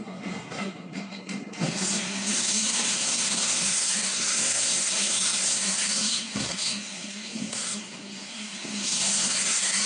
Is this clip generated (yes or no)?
yes